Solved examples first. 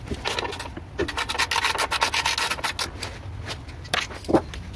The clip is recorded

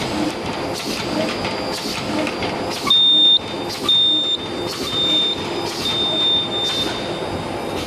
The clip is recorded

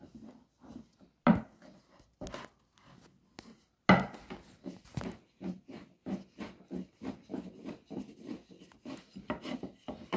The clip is recorded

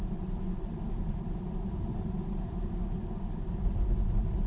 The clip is recorded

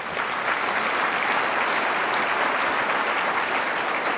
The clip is recorded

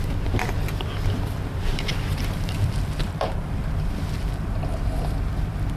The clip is remade